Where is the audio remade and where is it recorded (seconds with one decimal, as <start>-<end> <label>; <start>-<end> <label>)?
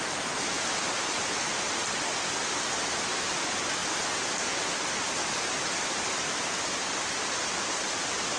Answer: 0.0-8.4 recorded